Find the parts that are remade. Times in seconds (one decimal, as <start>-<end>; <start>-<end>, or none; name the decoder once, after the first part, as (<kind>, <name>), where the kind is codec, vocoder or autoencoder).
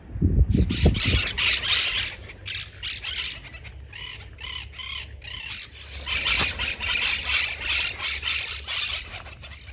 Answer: none